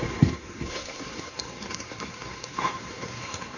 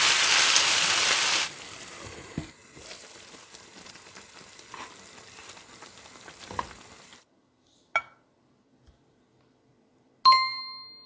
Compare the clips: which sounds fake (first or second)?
first